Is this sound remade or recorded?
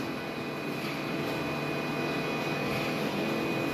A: recorded